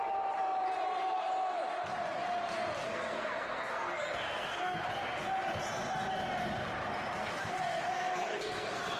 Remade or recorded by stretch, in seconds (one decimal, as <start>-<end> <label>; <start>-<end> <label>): 0.0-2.8 recorded; 2.8-4.9 remade; 4.9-7.2 recorded; 7.2-9.0 remade